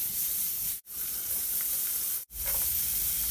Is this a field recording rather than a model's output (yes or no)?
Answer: no